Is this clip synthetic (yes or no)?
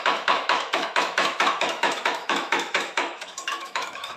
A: yes